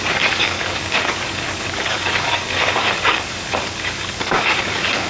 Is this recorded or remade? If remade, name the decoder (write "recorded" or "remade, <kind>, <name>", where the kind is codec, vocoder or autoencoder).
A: remade, codec, DAC